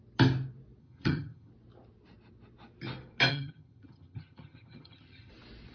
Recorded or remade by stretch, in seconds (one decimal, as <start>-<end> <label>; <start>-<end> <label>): 0.0-0.8 recorded; 0.8-1.5 remade; 1.5-3.3 recorded; 3.3-5.3 remade; 5.3-5.7 recorded

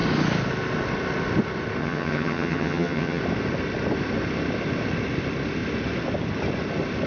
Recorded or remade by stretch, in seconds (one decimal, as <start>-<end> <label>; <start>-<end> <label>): 0.0-1.8 recorded; 1.8-3.2 remade; 3.2-7.1 recorded

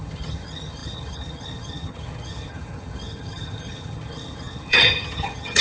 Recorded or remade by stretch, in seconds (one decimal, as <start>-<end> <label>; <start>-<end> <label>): 0.0-5.6 remade

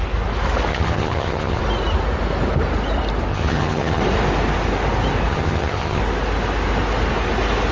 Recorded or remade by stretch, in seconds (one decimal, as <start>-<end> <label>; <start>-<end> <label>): 0.0-0.7 recorded; 0.7-1.6 remade; 1.6-3.3 recorded; 3.3-4.0 remade; 4.0-5.3 recorded; 5.3-6.0 remade; 6.0-7.7 recorded

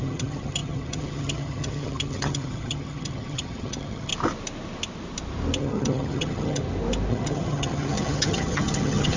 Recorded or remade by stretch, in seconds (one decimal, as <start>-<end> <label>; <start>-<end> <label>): 0.0-4.1 remade; 4.1-5.6 recorded; 5.6-6.6 remade; 6.6-7.1 recorded; 7.1-9.2 remade

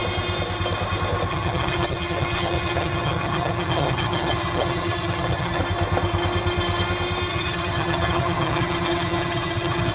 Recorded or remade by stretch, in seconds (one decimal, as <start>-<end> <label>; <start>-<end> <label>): 0.0-1.3 recorded; 1.3-5.6 remade; 5.6-7.3 recorded; 7.3-9.9 remade

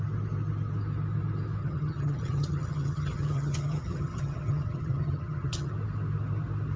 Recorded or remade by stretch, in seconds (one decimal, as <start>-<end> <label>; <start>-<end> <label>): 0.0-1.6 recorded; 1.6-5.7 remade; 5.7-6.8 recorded